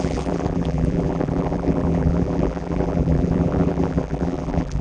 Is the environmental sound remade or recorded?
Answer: remade